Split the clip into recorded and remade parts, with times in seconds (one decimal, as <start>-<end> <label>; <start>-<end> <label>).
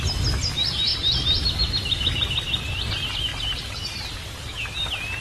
0.0-5.2 recorded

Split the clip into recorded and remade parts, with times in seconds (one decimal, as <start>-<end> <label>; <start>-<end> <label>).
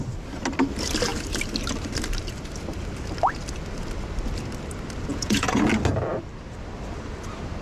0.0-5.1 recorded; 5.1-5.7 remade; 5.7-7.6 recorded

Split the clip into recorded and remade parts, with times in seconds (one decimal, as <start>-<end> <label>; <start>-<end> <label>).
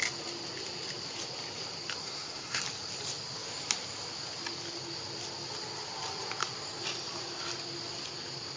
0.0-2.0 recorded; 2.0-2.6 remade; 2.6-8.6 recorded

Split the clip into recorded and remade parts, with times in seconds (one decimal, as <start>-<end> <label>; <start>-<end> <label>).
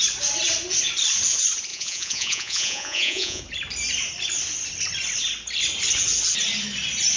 0.0-1.7 recorded; 1.7-3.4 remade; 3.4-7.2 recorded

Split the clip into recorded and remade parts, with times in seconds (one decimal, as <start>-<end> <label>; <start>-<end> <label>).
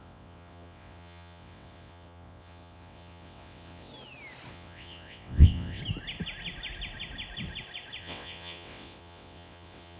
0.0-3.9 remade; 3.9-4.5 recorded; 4.5-5.8 remade; 5.8-8.0 recorded; 8.0-10.0 remade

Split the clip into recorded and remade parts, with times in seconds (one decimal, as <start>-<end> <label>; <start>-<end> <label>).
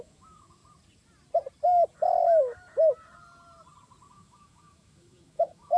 0.0-0.6 remade; 0.6-4.1 recorded; 4.1-5.8 remade